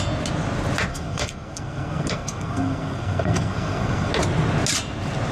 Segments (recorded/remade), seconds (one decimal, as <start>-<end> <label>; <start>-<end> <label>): 0.0-0.9 recorded; 0.9-4.1 remade; 4.1-5.3 recorded